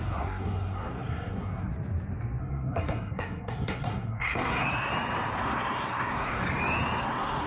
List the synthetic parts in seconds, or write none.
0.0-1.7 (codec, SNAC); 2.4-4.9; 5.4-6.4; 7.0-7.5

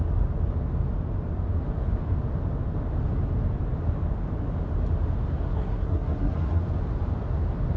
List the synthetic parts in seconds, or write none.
5.5-6.6 (codec, SNAC)

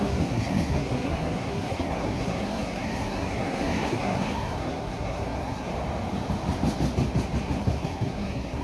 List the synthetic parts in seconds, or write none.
0.0-5.7 (codec, SNAC); 7.4-8.6

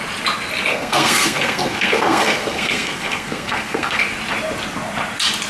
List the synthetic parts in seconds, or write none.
0.7-4.0 (codec, SNAC)

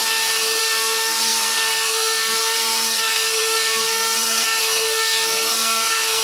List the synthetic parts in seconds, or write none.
0.6-6.2 (codec, SNAC)

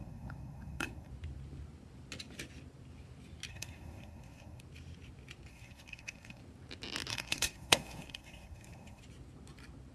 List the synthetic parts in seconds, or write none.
0.0-1.1 (codec, SNAC); 3.5-4.6; 5.5-6.4; 7.1-9.0